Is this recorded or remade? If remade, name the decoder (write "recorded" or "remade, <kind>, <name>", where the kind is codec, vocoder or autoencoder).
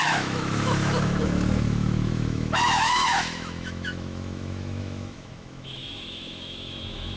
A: remade, autoencoder, DAC-VAE